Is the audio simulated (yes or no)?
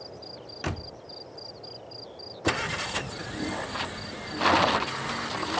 no